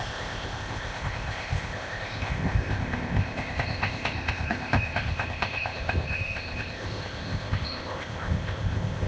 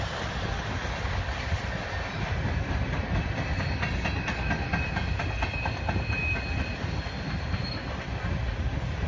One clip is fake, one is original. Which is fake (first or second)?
first